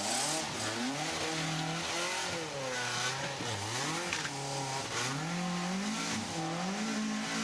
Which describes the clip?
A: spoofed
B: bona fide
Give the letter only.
B